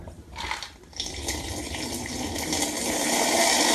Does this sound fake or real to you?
real